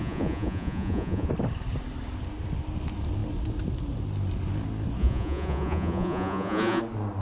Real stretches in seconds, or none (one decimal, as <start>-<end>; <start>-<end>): 1.3-5.0; 6.8-7.2